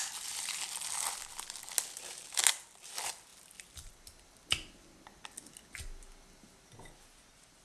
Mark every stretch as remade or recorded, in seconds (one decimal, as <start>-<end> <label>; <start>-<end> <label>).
0.0-7.6 recorded